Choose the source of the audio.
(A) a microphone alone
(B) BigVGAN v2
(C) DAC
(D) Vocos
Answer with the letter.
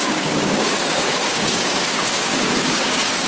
C